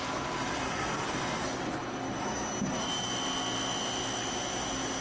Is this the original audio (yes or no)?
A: yes